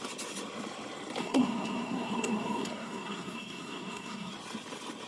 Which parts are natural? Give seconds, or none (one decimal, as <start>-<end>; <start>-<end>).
0.0-1.2; 4.3-5.1